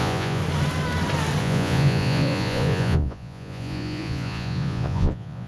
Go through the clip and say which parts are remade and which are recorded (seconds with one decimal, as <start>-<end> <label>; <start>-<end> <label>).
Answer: 0.0-0.4 remade; 0.4-1.4 recorded; 1.4-5.5 remade